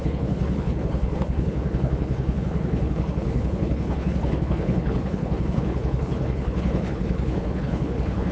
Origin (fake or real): fake